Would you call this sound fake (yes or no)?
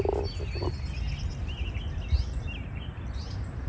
no